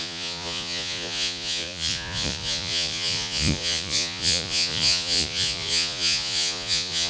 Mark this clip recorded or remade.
remade